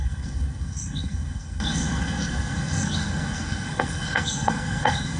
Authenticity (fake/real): fake